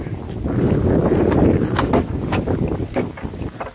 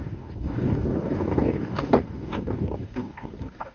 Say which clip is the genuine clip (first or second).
first